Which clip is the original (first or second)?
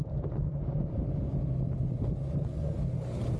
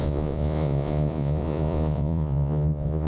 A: first